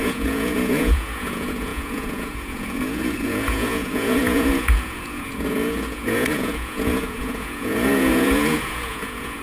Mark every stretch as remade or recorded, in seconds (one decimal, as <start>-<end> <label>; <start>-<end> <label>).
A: 0.0-9.4 remade